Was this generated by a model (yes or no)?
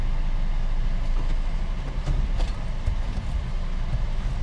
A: no